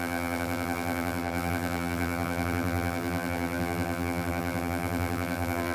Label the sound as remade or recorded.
remade